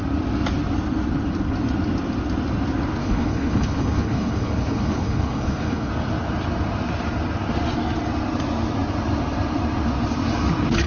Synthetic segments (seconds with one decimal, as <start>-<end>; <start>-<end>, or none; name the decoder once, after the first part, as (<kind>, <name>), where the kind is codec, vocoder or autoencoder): 3.0-5.9 (codec, HILCodec)